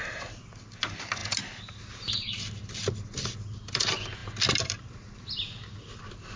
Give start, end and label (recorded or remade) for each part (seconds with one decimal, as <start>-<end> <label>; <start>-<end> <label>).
0.0-6.4 recorded